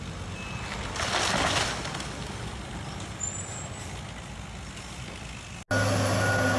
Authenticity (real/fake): real